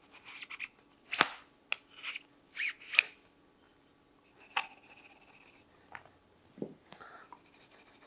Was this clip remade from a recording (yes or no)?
no